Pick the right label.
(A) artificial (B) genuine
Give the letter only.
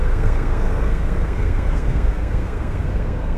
A